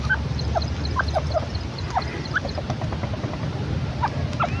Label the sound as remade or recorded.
recorded